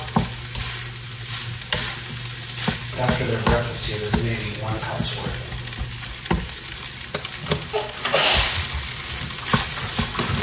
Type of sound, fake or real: real